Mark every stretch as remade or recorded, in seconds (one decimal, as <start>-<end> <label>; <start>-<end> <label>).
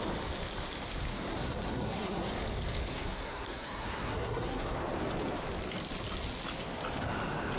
0.0-1.3 recorded; 1.3-2.3 remade; 2.3-2.9 recorded; 2.9-4.8 remade; 4.8-7.6 recorded